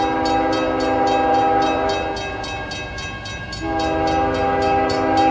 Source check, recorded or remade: recorded